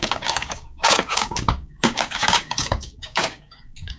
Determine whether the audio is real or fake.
fake